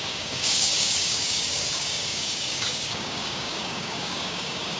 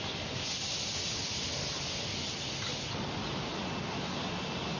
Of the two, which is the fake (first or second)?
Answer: first